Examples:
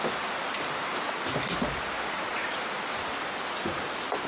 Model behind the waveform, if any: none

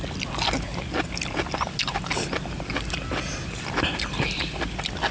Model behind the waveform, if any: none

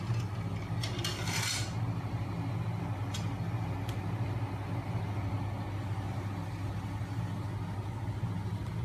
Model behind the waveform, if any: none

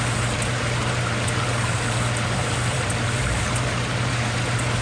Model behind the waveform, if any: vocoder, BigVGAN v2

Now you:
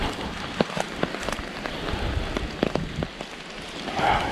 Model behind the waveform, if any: vocoder, BigVGAN v2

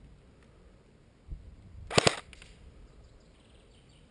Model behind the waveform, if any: none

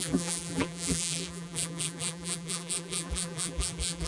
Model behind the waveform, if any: vocoder, BigVGAN v2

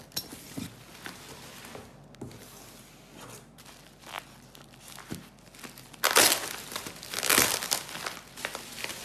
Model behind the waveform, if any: none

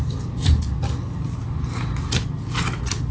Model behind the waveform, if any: none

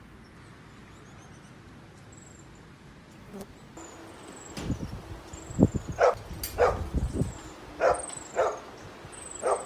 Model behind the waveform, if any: none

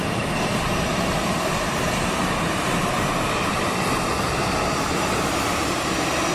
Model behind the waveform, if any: vocoder, BigVGAN v2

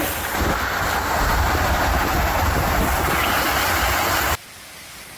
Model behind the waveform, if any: none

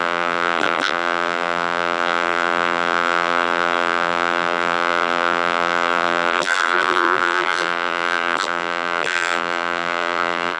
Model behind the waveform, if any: vocoder, BigVGAN v2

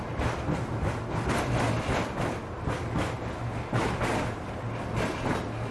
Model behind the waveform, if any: none